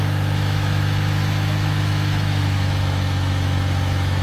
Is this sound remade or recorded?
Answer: remade